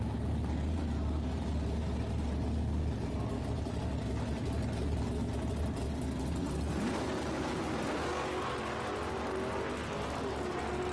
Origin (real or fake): real